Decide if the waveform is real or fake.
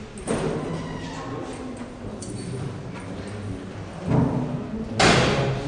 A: real